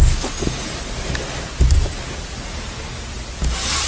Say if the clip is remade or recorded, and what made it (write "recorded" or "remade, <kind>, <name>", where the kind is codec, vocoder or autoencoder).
recorded